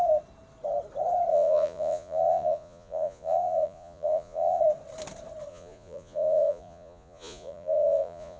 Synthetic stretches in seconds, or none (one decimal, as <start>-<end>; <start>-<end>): 1.3-4.6; 5.5-8.4